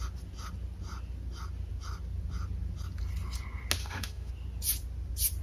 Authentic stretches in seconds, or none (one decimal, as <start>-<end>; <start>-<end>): 0.0-3.8; 4.3-5.4